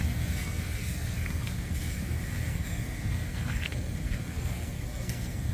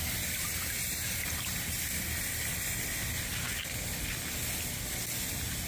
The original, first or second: second